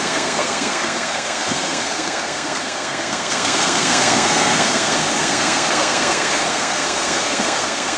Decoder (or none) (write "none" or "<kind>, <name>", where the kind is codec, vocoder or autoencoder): codec, SNAC